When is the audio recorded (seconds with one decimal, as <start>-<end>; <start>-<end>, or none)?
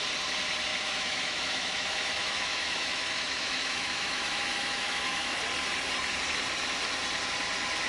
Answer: 0.0-0.7; 5.4-7.9